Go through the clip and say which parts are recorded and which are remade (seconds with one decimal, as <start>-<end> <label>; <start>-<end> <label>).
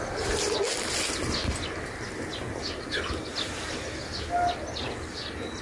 0.0-5.6 recorded